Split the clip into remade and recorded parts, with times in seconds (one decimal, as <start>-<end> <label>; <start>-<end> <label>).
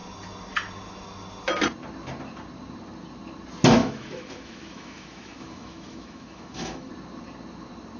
0.0-3.8 recorded; 3.8-6.9 remade; 6.9-8.0 recorded